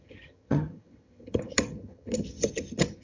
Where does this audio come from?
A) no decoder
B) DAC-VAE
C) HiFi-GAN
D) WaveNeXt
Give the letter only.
C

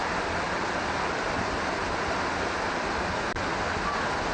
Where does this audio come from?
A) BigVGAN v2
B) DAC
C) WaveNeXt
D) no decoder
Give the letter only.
D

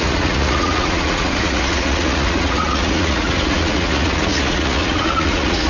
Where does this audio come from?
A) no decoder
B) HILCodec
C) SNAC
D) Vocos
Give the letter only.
D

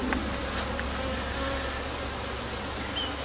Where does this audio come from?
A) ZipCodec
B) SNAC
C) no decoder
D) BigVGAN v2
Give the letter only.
C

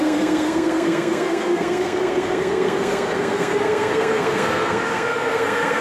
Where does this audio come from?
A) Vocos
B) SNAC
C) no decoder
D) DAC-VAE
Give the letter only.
B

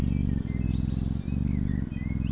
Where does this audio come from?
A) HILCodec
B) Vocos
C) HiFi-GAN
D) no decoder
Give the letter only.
D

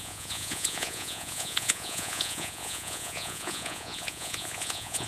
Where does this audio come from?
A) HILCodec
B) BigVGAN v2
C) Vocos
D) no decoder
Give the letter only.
C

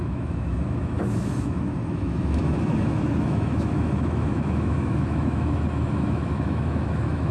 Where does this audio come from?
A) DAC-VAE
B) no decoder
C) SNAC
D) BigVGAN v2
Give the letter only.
A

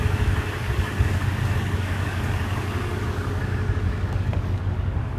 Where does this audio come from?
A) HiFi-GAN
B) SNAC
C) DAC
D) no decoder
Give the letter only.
C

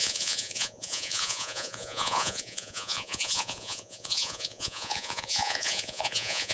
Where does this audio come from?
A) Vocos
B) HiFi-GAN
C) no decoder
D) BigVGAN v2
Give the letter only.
A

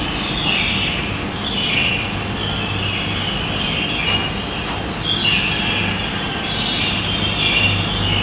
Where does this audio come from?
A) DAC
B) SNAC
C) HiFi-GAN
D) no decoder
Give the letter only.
D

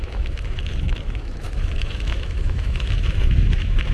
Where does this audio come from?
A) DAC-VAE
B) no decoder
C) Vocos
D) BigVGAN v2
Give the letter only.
A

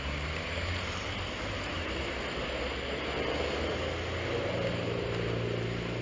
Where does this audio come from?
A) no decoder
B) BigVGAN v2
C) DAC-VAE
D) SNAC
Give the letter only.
A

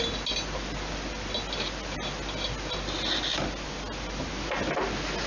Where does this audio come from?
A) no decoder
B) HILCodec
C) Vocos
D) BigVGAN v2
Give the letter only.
A